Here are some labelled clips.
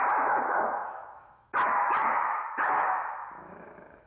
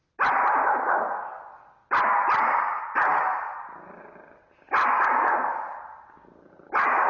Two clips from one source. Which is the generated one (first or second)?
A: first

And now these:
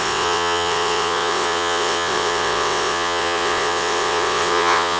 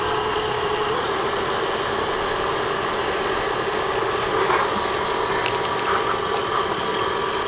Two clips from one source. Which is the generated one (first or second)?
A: first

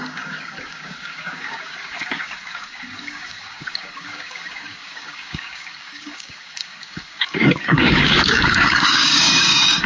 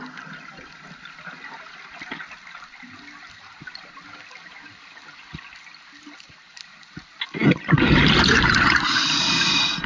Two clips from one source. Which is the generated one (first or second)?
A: first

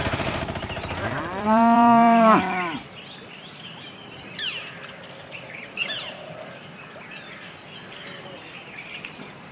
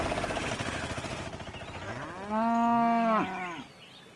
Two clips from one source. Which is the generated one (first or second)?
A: first